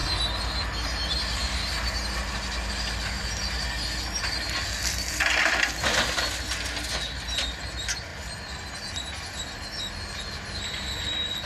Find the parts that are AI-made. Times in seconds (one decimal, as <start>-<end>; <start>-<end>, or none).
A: none